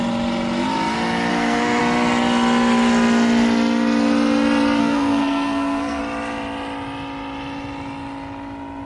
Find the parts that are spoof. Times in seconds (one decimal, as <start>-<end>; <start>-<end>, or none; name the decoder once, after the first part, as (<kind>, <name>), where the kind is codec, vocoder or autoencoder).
1.3-1.8 (codec, SNAC); 4.8-6.0